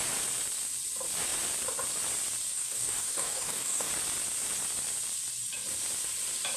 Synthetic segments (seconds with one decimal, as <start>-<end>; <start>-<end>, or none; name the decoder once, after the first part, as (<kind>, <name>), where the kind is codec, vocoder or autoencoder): 2.5-3.9 (codec, DAC)